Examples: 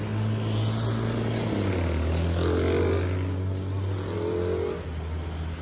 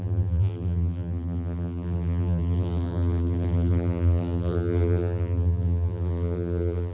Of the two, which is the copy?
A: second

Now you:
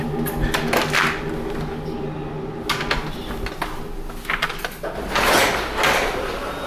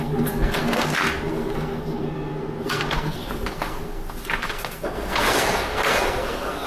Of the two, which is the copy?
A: second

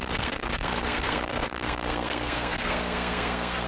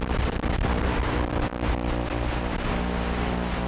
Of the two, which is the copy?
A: first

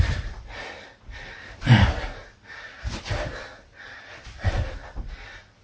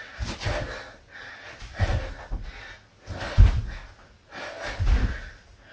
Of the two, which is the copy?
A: first